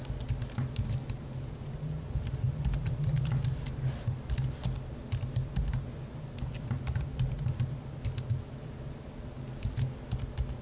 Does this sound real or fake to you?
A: real